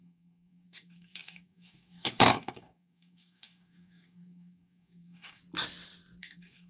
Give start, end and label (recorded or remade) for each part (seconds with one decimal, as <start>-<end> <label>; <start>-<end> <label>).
0.0-5.4 remade; 5.4-6.2 recorded; 6.2-6.7 remade